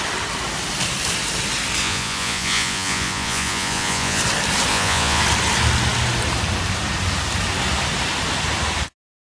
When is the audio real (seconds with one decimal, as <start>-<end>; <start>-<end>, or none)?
0.0-1.8; 4.2-4.7; 5.2-9.2